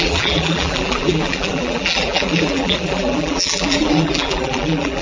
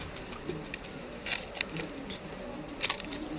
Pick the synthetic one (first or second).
first